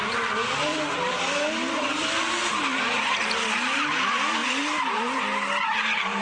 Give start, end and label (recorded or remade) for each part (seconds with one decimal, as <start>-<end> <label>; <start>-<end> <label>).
0.0-0.7 recorded; 0.7-2.3 remade; 2.3-2.7 recorded; 2.7-3.3 remade; 3.3-4.4 recorded; 4.4-5.2 remade; 5.2-6.2 recorded